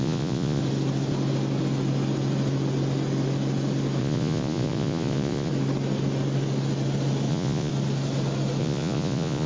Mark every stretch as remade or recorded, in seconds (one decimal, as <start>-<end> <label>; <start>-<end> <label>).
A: 0.0-0.6 remade; 0.6-4.0 recorded; 4.0-5.5 remade; 5.5-7.3 recorded; 7.3-7.7 remade; 7.7-8.6 recorded; 8.6-9.5 remade

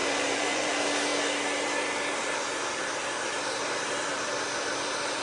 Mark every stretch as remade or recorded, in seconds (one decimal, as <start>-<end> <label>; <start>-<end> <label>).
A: 0.0-0.7 remade; 0.7-5.2 recorded

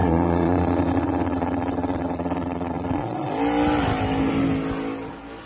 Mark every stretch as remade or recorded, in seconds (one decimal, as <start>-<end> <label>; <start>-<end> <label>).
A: 0.0-3.3 remade; 3.3-5.5 recorded

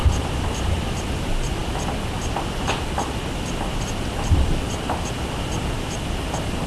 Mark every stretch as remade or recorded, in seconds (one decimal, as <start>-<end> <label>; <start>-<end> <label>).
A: 0.0-6.7 recorded